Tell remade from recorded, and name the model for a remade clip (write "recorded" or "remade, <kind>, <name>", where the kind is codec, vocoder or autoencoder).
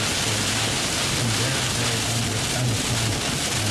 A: recorded